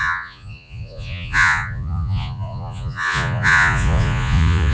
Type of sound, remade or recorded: remade